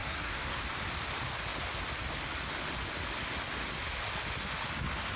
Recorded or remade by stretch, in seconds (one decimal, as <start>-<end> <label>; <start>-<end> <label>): 0.0-0.6 remade; 0.6-5.2 recorded